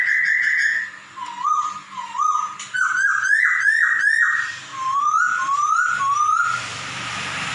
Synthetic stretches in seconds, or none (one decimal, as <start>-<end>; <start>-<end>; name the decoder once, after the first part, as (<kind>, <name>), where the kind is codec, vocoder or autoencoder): 4.7-7.5 (vocoder, BigVGAN v2)